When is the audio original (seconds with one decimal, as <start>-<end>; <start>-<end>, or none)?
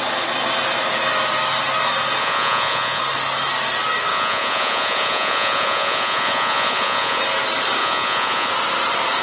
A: 0.0-2.2; 3.0-4.1; 7.2-7.8; 8.5-9.2